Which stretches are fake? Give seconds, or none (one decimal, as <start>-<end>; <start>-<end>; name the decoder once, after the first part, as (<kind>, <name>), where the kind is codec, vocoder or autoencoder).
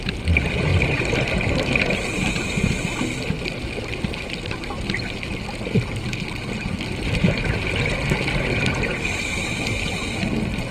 0.7-2.3 (vocoder, BigVGAN v2)